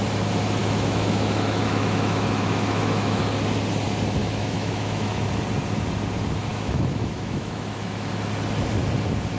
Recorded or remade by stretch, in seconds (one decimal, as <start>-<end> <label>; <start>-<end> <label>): 0.0-0.6 recorded; 0.6-3.2 remade; 3.2-4.2 recorded; 4.2-5.4 remade; 5.4-6.5 recorded; 6.5-8.1 remade; 8.1-9.4 recorded